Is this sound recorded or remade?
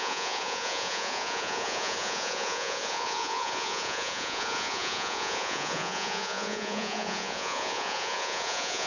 remade